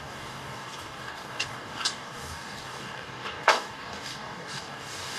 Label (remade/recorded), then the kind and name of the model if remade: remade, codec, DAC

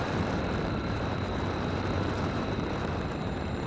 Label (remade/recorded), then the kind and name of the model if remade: remade, vocoder, BigVGAN v2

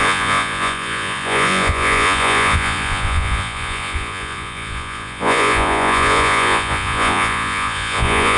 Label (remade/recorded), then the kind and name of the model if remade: remade, vocoder, Vocos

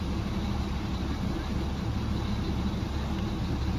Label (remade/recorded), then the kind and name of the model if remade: recorded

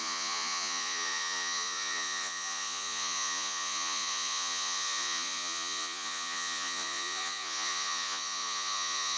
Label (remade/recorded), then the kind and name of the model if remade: remade, vocoder, Vocos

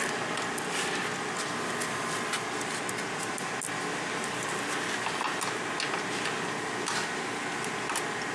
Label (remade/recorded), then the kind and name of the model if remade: recorded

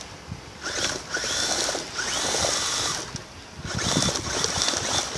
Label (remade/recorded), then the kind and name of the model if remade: recorded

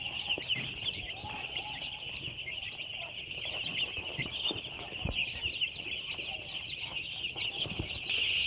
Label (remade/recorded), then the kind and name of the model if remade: remade, vocoder, BigVGAN v2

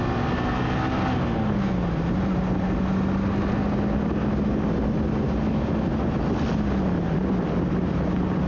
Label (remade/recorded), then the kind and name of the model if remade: recorded